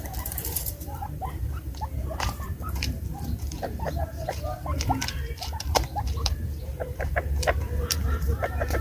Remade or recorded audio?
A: remade